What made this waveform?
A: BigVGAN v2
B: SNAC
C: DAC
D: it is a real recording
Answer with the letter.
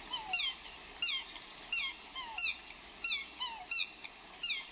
D